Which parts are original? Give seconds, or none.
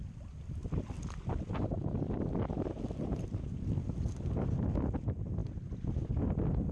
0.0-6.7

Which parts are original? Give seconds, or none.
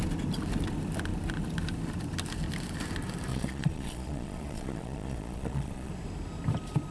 0.0-3.3; 5.9-6.9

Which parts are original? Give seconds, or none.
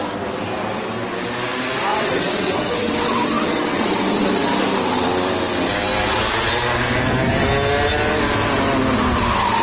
0.0-1.9; 4.3-9.6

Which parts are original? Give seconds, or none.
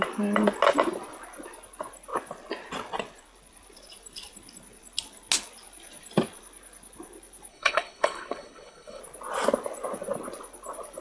0.0-7.5; 9.0-11.0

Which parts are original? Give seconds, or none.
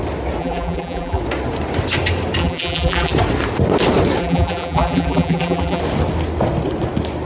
0.0-0.4; 1.2-2.4; 3.1-4.2; 5.8-7.2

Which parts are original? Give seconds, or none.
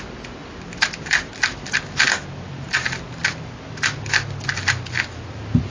0.0-5.7